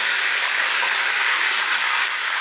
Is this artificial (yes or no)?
yes